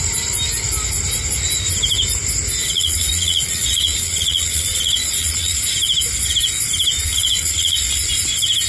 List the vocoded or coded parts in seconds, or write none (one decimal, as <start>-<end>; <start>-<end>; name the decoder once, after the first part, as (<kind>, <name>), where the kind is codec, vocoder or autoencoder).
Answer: 2.6-5.6 (vocoder, Vocos); 7.0-7.9